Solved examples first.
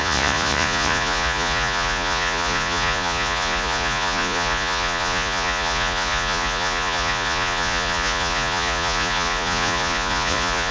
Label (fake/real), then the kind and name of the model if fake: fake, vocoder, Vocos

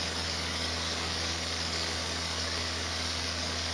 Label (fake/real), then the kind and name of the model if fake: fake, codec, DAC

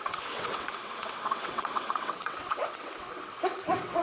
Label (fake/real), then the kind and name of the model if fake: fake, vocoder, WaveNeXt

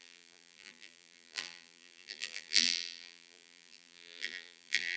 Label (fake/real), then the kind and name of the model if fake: fake, vocoder, BigVGAN v2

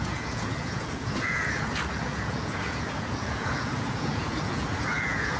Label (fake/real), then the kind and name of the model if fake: fake, vocoder, Vocos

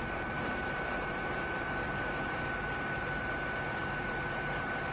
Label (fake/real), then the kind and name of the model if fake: fake, vocoder, BigVGAN v2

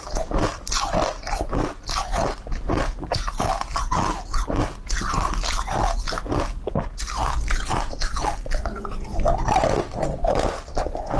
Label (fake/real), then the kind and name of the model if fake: real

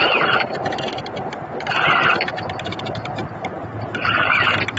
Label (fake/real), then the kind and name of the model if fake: fake, vocoder, BigVGAN v2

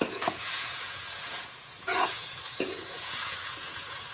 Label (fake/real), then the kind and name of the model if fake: fake, vocoder, Vocos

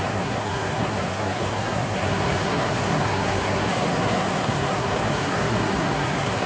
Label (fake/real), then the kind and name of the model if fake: fake, codec, SNAC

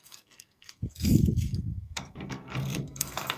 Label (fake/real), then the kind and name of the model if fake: fake, codec, SNAC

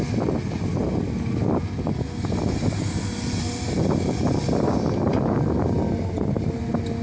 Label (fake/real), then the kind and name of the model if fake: real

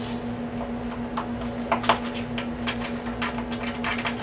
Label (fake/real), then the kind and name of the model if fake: real